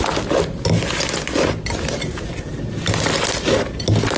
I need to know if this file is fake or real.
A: real